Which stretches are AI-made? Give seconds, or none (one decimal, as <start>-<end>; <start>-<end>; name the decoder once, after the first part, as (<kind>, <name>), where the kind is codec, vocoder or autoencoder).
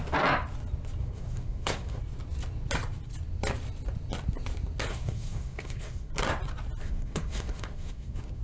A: 1.0-2.0 (codec, SNAC); 4.9-6.1; 6.8-8.4